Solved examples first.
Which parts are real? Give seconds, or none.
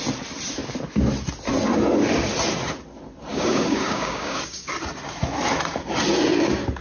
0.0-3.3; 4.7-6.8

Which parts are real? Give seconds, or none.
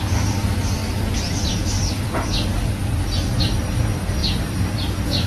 0.8-1.4; 2.5-3.4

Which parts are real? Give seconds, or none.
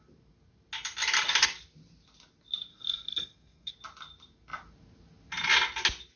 0.0-2.7; 3.7-6.2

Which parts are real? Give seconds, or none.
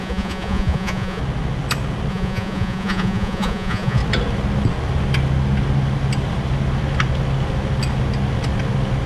1.2-2.1; 4.0-9.1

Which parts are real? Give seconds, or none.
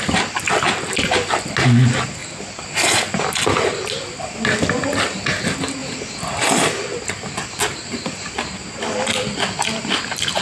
0.0-10.4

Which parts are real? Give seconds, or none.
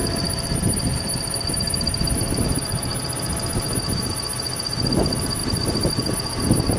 2.9-4.9